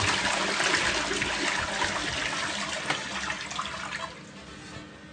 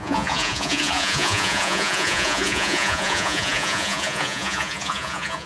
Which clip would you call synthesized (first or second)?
second